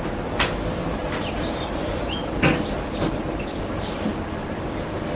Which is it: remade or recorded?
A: recorded